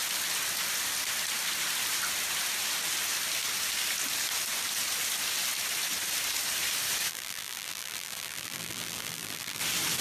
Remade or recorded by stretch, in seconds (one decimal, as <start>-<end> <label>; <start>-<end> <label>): 0.0-7.1 recorded; 7.1-9.6 remade; 9.6-10.0 recorded